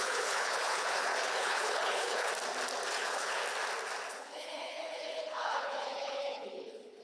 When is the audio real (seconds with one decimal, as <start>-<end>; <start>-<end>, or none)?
2.3-2.9; 3.4-4.1